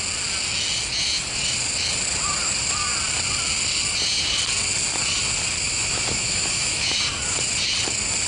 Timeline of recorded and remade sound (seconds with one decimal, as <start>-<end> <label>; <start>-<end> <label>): 0.0-5.7 recorded; 5.7-7.0 remade; 7.0-8.3 recorded